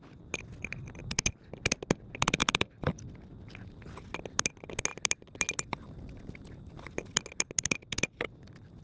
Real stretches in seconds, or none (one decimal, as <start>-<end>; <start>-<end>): 0.0-8.8